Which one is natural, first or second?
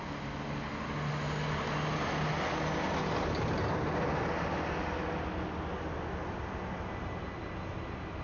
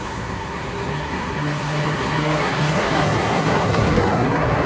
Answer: first